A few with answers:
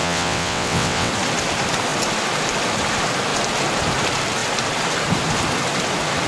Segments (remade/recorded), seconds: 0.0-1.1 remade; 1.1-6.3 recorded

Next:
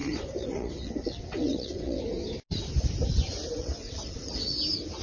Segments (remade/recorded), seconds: 0.0-2.0 remade; 2.0-3.6 recorded; 3.6-4.6 remade; 4.6-5.0 recorded

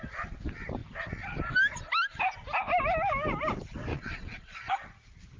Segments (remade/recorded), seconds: 0.0-3.9 recorded; 3.9-4.7 remade; 4.7-5.4 recorded

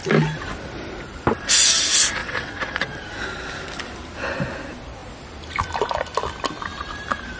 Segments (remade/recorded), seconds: 0.0-2.2 recorded; 2.2-2.9 remade; 2.9-7.4 recorded

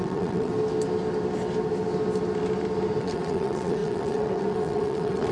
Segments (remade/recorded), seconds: 0.0-0.5 remade; 0.5-3.0 recorded; 3.0-5.3 remade

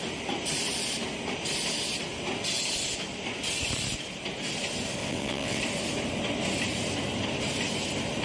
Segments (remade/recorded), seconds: 0.0-5.0 recorded; 5.0-5.6 remade; 5.6-8.2 recorded

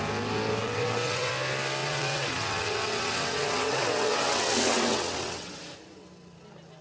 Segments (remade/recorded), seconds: 0.0-0.6 recorded; 0.6-1.3 remade; 1.3-1.8 recorded; 1.8-5.6 remade; 5.6-6.8 recorded

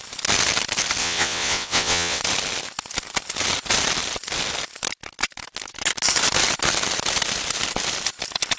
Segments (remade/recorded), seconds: 0.0-1.0 recorded; 1.0-2.2 remade; 2.2-8.6 recorded